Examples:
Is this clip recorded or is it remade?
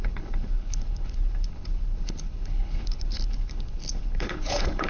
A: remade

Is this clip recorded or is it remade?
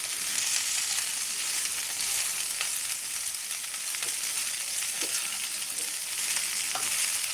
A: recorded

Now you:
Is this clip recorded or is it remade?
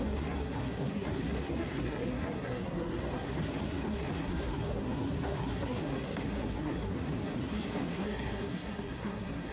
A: remade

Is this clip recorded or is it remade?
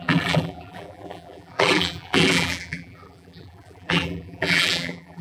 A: remade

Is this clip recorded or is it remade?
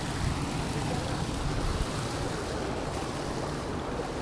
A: recorded